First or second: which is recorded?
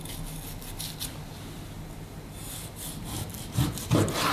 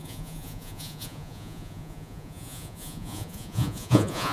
first